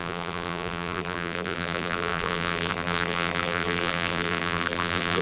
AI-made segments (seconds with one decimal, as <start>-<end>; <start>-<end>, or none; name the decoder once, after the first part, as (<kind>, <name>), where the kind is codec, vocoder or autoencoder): 0.0-5.2 (vocoder, BigVGAN v2)